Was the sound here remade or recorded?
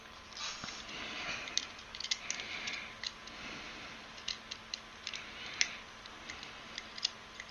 recorded